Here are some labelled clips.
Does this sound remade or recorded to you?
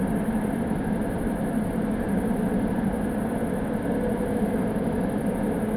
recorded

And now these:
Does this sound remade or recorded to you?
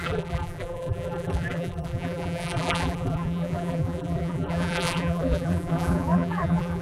remade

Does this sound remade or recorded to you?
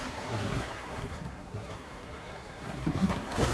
remade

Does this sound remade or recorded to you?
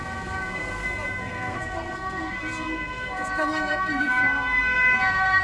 remade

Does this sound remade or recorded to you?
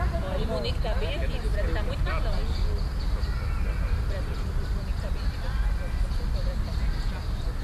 recorded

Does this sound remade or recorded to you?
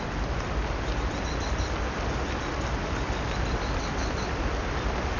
recorded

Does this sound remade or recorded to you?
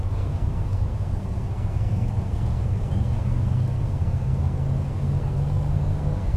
remade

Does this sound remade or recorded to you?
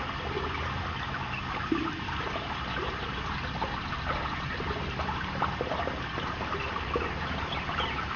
recorded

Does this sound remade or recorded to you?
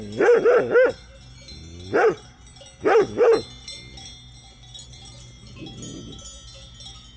recorded